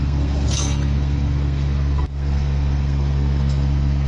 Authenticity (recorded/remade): remade